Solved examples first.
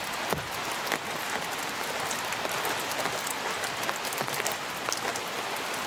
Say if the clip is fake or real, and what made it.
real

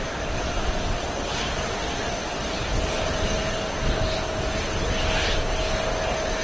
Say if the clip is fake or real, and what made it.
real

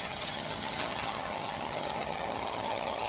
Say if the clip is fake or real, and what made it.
fake, vocoder, HiFi-GAN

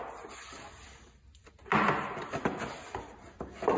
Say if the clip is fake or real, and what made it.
real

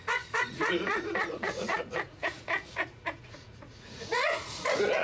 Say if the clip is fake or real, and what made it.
fake, vocoder, Vocos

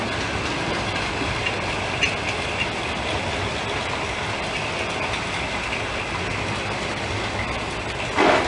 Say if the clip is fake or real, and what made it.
real